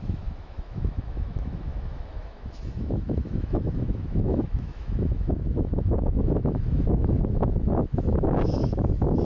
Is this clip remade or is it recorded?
remade